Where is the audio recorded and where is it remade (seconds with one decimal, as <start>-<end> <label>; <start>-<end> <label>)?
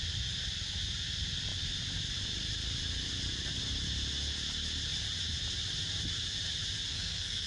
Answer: 0.0-6.9 recorded; 6.9-7.5 remade